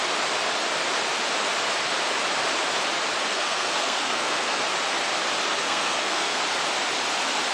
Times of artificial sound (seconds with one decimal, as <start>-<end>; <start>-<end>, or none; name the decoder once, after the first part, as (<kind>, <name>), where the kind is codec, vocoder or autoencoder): 3.3-4.6 (codec, SNAC); 5.6-6.4

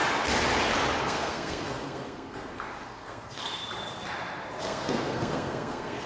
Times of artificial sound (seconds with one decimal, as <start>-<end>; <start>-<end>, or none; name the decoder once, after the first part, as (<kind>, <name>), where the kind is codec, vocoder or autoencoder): 1.0-3.6 (codec, SNAC); 4.6-6.1

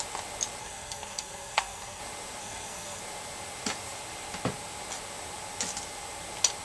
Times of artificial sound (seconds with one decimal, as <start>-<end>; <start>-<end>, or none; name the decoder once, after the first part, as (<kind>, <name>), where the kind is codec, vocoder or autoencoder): 0.6-2.0 (codec, SNAC); 2.4-3.0

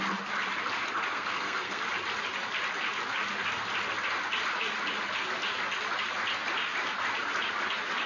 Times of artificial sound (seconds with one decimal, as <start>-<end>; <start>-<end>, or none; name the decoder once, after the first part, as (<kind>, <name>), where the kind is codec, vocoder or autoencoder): 1.1-1.8 (codec, SNAC)